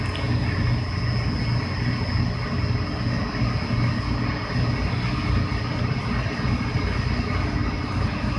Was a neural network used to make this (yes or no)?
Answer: no